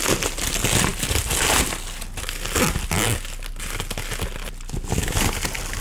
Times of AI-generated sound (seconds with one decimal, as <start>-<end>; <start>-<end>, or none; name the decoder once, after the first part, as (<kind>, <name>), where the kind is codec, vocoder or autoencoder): none